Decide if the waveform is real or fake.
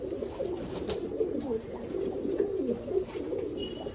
fake